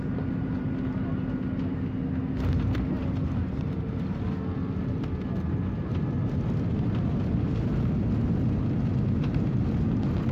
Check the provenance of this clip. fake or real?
real